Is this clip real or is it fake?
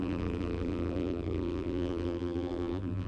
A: fake